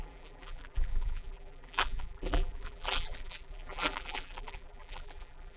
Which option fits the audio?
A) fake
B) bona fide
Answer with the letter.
A